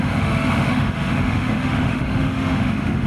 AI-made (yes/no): yes